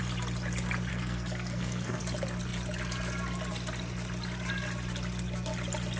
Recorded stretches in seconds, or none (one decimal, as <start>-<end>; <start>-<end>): 0.0-0.9; 2.0-6.0